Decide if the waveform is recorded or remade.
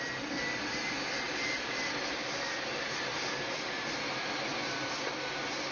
recorded